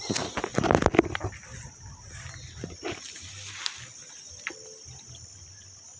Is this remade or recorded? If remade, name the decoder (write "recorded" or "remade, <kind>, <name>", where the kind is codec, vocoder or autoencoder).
recorded